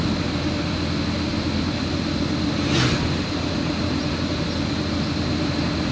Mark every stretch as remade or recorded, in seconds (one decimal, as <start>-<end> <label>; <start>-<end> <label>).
0.0-5.9 recorded

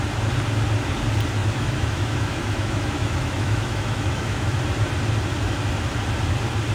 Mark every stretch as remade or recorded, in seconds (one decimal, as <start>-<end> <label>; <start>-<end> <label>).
0.0-1.4 recorded; 1.4-4.6 remade; 4.6-6.7 recorded

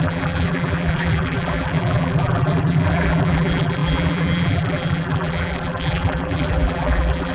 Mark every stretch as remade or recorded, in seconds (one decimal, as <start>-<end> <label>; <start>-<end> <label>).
0.0-7.3 remade

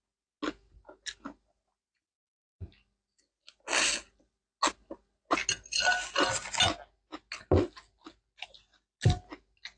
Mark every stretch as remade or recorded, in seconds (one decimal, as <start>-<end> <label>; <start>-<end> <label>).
0.0-9.8 recorded

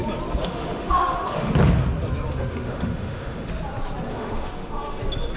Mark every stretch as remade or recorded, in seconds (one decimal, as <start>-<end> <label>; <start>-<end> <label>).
0.0-0.4 recorded; 0.4-1.5 remade; 1.5-2.3 recorded; 2.3-3.5 remade; 3.5-4.1 recorded; 4.1-5.0 remade; 5.0-5.4 recorded

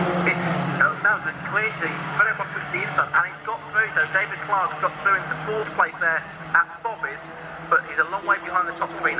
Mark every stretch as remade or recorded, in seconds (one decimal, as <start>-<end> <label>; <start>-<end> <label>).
0.0-0.7 recorded; 0.7-3.2 remade; 3.2-9.2 recorded